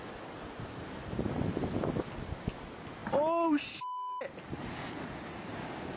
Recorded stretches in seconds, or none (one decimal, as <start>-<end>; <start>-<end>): 0.0-5.5